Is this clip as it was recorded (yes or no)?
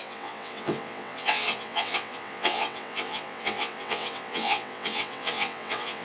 no